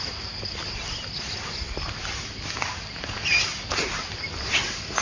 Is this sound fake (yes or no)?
no